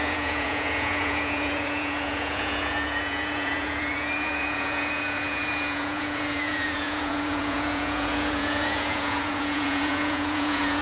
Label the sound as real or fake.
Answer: fake